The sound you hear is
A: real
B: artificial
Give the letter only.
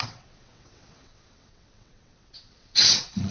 B